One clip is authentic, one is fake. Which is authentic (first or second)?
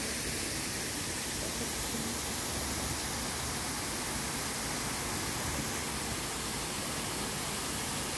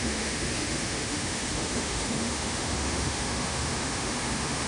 first